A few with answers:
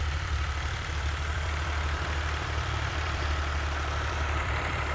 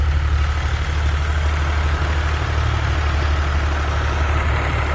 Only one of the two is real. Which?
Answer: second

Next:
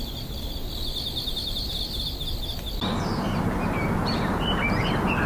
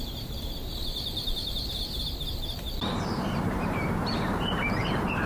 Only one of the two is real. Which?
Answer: first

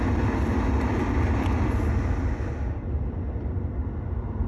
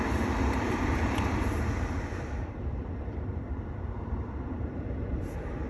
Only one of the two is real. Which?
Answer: first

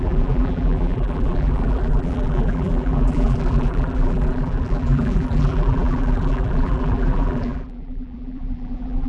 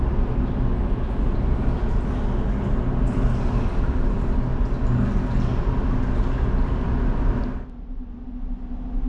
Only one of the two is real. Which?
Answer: second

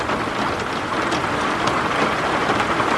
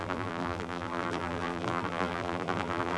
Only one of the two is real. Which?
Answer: first